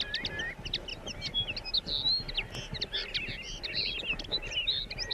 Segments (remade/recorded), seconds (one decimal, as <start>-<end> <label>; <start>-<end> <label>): 0.0-5.1 recorded

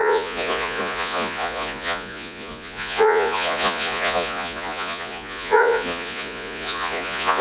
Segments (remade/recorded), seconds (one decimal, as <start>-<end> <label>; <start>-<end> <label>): 0.0-7.4 remade